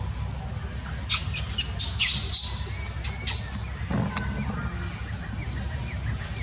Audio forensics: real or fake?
real